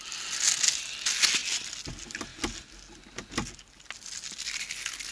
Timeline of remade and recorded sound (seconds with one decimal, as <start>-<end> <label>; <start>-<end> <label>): 0.0-5.1 recorded